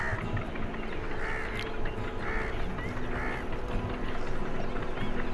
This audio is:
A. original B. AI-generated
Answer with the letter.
A